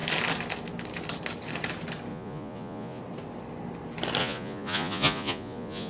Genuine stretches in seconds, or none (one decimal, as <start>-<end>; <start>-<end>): 0.0-2.1; 3.0-4.2